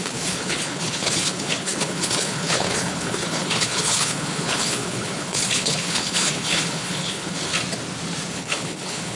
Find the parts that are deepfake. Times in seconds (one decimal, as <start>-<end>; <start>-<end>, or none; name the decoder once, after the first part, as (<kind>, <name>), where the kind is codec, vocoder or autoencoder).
0.0-7.5 (codec, HILCodec); 8.3-9.2